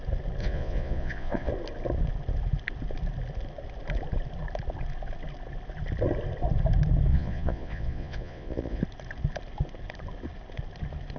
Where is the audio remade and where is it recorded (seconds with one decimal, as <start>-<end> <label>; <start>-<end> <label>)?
0.0-0.4 recorded; 0.4-1.5 remade; 1.5-7.1 recorded; 7.1-8.8 remade; 8.8-11.2 recorded